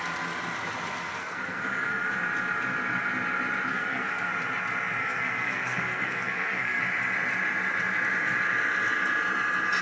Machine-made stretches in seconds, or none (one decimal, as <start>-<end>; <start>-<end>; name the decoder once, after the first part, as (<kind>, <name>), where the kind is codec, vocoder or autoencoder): 1.2-2.1 (codec, SNAC); 3.7-4.3; 5.0-6.8